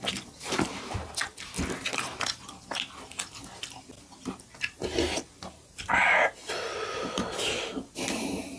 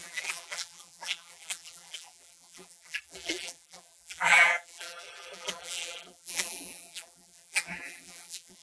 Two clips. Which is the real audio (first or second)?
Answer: first